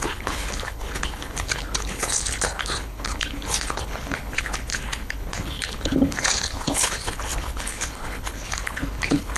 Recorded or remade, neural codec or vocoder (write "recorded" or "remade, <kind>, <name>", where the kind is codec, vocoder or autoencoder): remade, codec, HILCodec